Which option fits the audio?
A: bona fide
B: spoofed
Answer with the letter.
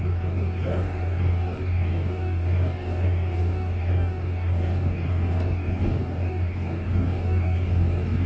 B